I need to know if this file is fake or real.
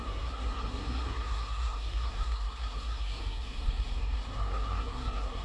fake